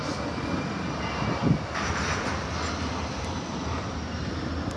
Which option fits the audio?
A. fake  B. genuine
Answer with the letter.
B